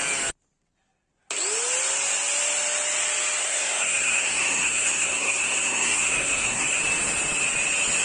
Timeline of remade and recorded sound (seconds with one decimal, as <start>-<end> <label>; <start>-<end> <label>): 0.0-3.4 recorded; 3.4-6.8 remade; 6.8-8.0 recorded